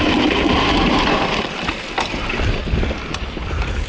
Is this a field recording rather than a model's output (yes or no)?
yes